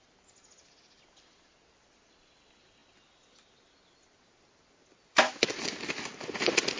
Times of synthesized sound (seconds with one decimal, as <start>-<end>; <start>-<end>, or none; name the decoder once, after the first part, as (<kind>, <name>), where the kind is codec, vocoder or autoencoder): none